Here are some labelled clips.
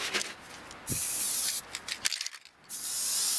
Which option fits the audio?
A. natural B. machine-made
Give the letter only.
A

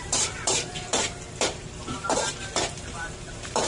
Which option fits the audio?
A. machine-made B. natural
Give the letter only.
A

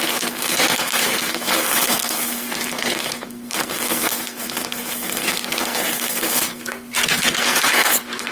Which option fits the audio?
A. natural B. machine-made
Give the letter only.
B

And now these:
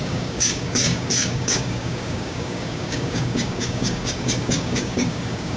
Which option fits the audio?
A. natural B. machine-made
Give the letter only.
B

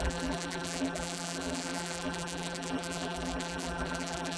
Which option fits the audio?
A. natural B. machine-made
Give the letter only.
B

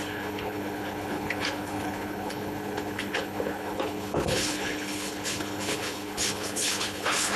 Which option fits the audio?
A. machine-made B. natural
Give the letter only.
A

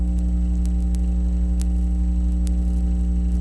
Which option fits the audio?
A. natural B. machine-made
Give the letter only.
A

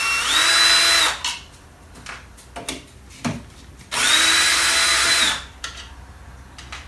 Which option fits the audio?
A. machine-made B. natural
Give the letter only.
B